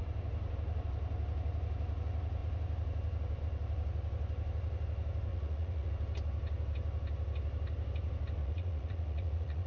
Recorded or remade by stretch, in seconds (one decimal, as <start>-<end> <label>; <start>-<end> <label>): 0.0-5.3 recorded; 5.3-5.9 remade; 5.9-8.4 recorded; 8.4-9.7 remade